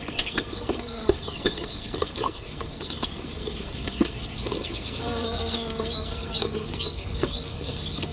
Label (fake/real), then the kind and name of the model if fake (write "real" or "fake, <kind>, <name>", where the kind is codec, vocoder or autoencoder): fake, codec, SNAC